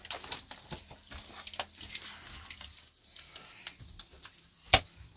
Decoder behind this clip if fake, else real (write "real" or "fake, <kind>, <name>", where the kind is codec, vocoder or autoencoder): real